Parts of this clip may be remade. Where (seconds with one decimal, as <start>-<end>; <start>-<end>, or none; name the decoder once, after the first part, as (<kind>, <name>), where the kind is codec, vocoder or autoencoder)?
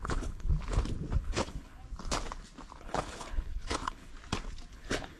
0.0-0.5 (codec, HILCodec); 1.2-1.8; 2.8-4.1; 4.7-5.2